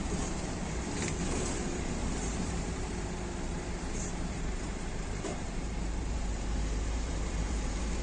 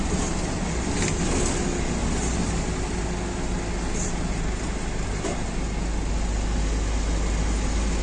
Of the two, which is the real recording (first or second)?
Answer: second